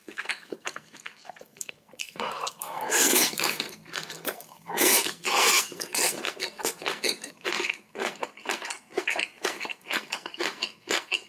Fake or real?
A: fake